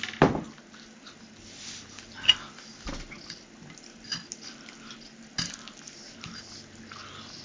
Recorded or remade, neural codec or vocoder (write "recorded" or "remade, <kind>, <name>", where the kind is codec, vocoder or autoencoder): recorded